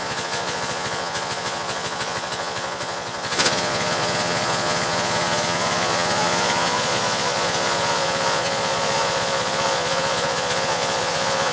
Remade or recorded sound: remade